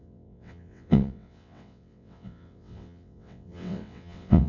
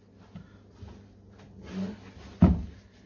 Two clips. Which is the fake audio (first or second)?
first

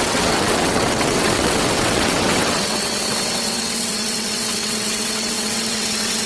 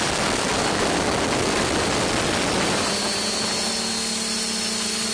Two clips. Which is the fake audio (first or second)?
first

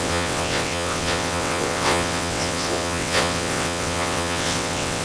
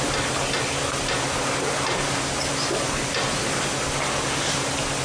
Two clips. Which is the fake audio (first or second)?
first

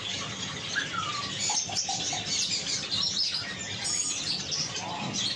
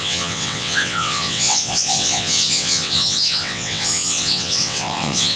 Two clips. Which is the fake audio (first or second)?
second